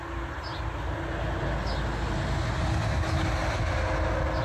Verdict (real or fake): real